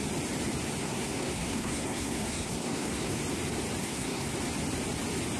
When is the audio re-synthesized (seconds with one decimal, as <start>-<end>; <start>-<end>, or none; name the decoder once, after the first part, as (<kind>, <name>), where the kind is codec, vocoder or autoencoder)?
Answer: 0.8-3.2 (codec, SNAC); 3.8-4.3